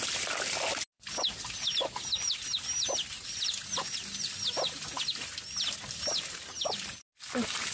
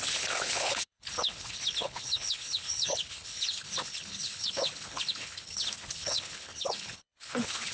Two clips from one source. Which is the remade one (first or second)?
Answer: second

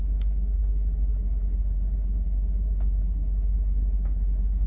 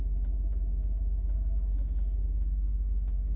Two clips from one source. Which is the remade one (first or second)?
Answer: first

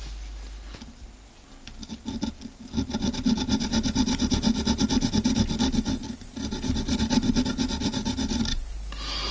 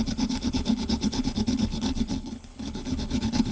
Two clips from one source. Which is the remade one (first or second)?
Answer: second